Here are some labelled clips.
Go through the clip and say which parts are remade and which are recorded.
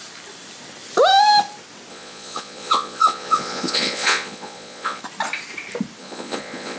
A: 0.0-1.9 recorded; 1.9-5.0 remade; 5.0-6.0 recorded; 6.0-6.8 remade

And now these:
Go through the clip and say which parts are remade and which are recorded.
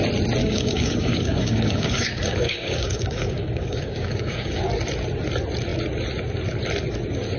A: 0.0-0.4 recorded; 0.4-4.6 remade; 4.6-7.4 recorded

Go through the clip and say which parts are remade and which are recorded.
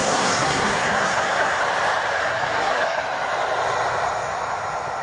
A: 0.0-1.6 remade; 1.6-2.2 recorded; 2.2-3.0 remade; 3.0-5.0 recorded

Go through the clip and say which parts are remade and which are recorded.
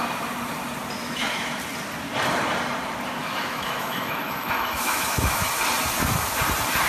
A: 0.0-1.0 recorded; 1.0-1.6 remade; 1.6-3.2 recorded; 3.2-5.5 remade; 5.5-6.9 recorded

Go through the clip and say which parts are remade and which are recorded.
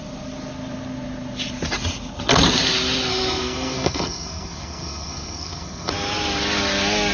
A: 0.0-3.1 recorded; 3.1-5.9 remade; 5.9-7.1 recorded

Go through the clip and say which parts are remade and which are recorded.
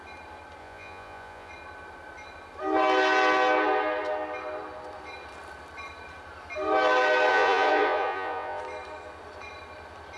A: 0.0-0.6 recorded; 0.6-1.5 remade; 1.5-7.3 recorded; 7.3-8.6 remade; 8.6-10.2 recorded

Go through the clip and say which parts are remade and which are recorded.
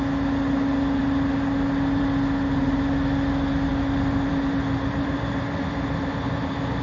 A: 0.0-6.8 recorded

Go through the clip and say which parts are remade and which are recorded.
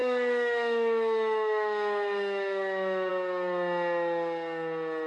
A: 0.0-3.1 remade; 3.1-5.1 recorded